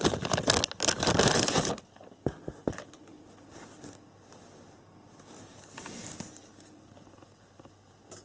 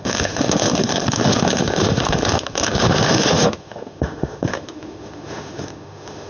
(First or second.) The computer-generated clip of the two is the second